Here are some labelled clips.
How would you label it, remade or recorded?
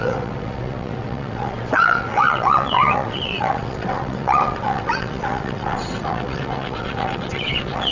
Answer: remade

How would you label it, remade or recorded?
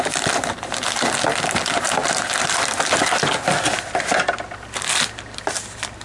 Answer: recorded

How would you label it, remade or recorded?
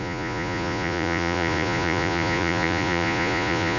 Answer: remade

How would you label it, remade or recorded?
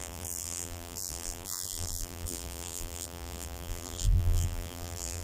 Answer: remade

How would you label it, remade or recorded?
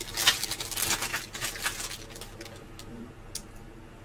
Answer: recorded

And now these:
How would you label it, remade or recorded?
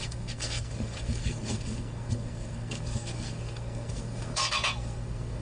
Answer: remade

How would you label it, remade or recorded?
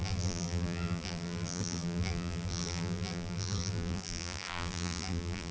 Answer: remade